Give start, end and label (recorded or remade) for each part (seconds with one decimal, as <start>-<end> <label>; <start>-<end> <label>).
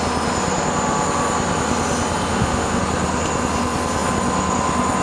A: 0.0-2.3 recorded; 2.3-2.8 remade; 2.8-5.0 recorded